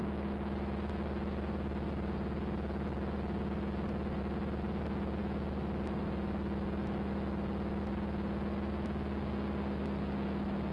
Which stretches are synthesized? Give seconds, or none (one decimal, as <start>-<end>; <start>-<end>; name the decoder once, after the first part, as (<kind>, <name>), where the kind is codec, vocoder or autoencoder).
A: none